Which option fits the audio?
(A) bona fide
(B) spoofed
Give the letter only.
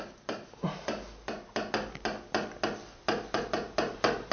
A